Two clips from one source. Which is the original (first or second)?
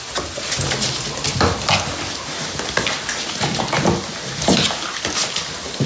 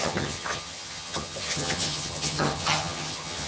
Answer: first